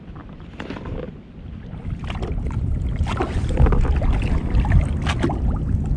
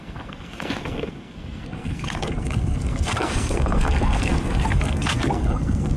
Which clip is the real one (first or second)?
first